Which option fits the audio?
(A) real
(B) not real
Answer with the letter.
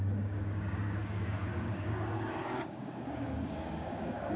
B